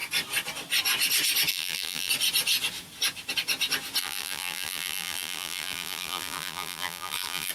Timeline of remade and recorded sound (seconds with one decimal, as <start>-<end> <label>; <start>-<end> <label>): 0.0-1.5 recorded; 1.5-2.1 remade; 2.1-4.0 recorded; 4.0-7.5 remade

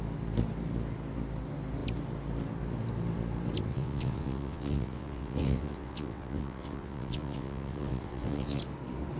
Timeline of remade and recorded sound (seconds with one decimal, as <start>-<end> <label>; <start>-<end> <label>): 0.0-3.7 recorded; 3.7-8.6 remade; 8.6-9.2 recorded

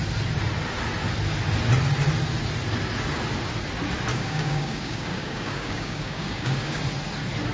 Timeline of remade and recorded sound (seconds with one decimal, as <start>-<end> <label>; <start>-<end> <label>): 0.0-4.1 recorded; 4.1-6.8 remade; 6.8-7.5 recorded